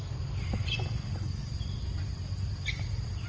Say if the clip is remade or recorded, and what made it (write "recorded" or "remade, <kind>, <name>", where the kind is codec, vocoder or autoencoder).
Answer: recorded